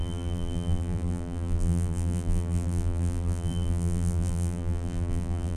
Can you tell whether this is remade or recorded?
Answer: remade